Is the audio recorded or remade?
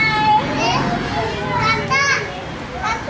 recorded